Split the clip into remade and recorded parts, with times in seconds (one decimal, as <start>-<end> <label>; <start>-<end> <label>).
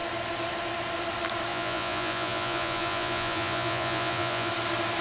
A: 0.0-1.5 recorded; 1.5-4.5 remade; 4.5-5.0 recorded